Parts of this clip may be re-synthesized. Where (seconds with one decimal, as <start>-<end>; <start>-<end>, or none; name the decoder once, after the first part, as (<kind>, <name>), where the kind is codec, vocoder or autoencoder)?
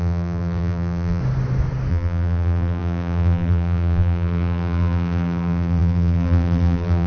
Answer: 0.0-1.2 (vocoder, BigVGAN v2); 1.9-7.1